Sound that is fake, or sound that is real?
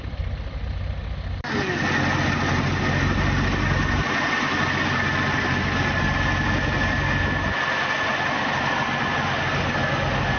real